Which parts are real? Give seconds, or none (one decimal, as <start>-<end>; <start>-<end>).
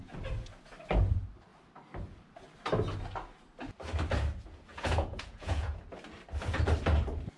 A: 0.0-4.7; 5.8-7.4